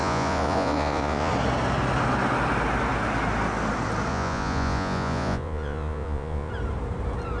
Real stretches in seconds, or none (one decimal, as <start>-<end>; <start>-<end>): 1.3-4.1; 6.5-7.4